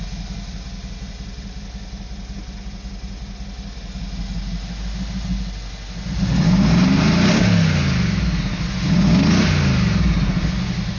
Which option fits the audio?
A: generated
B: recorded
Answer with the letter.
B